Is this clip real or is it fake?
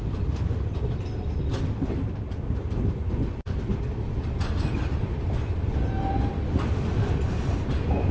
real